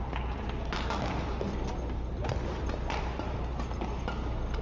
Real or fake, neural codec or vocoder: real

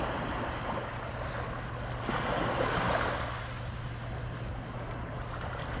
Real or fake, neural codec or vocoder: real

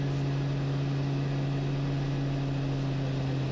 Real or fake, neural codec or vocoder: real